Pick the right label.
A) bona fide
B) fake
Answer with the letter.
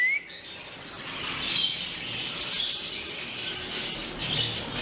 A